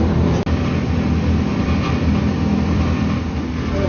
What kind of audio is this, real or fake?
real